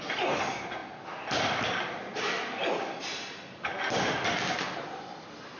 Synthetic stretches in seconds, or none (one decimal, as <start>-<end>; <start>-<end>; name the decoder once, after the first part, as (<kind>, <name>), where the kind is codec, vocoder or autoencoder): none